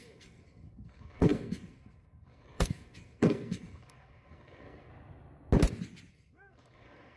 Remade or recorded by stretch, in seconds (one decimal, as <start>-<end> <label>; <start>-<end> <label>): 0.0-4.9 remade; 4.9-6.1 recorded; 6.1-7.2 remade